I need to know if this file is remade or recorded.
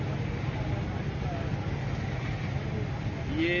recorded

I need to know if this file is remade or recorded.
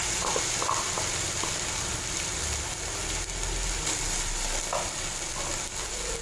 recorded